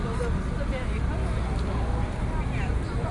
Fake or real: real